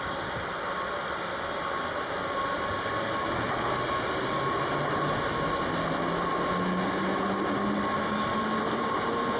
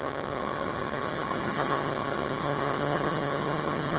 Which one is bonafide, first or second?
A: first